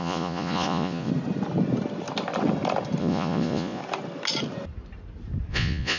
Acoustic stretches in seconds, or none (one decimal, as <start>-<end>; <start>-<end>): 1.1-3.0; 3.8-5.5